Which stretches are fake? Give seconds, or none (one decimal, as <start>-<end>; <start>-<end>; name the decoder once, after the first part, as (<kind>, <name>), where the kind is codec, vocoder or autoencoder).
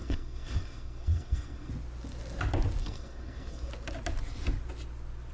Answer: 0.0-1.7 (codec, SNAC); 2.8-3.7